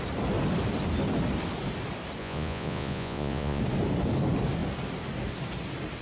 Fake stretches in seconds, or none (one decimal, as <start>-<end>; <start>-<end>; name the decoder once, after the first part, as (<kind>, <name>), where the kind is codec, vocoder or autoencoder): 2.2-3.6 (vocoder, Vocos)